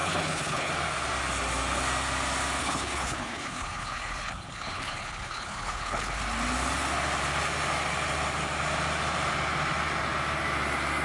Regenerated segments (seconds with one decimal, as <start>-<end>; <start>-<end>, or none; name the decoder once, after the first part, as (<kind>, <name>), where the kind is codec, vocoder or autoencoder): 0.0-0.7 (codec, HILCodec); 2.6-6.2